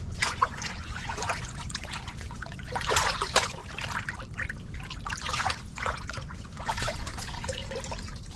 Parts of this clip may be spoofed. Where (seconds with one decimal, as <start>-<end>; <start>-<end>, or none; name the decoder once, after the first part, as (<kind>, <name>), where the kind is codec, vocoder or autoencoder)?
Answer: 0.0-3.6 (vocoder, Vocos); 5.2-7.6

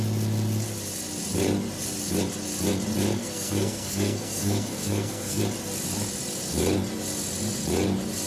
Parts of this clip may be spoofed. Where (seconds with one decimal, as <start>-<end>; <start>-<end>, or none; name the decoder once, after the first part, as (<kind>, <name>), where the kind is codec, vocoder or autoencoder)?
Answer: 3.2-5.4 (codec, SNAC)